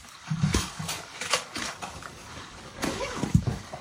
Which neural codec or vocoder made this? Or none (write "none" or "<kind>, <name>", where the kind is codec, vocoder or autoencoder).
codec, DAC